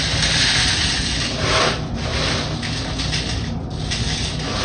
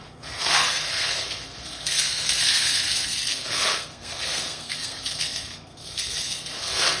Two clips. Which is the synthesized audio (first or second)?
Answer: second